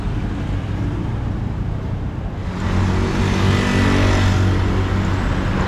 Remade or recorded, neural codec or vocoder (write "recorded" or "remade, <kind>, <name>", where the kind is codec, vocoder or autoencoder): recorded